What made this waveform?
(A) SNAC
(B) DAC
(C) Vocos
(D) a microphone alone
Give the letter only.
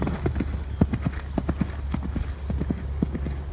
D